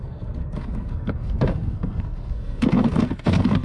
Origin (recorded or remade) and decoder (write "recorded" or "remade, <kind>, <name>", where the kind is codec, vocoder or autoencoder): remade, codec, SNAC